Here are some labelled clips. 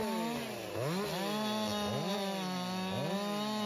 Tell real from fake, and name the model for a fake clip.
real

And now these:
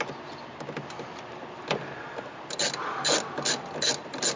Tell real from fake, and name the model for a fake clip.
real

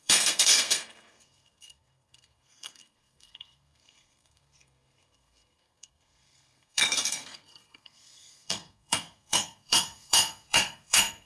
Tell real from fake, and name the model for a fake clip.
fake, codec, SNAC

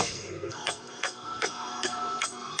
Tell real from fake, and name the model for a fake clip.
fake, codec, SNAC